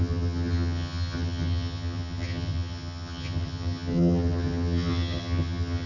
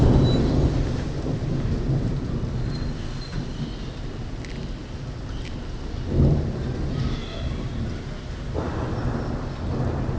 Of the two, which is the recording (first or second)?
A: second